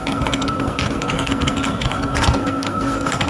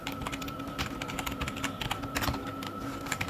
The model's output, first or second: first